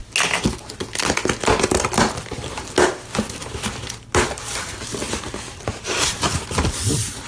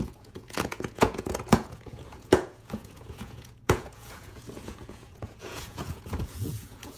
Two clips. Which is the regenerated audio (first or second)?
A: second